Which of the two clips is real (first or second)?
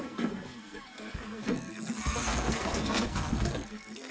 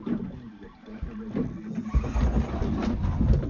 second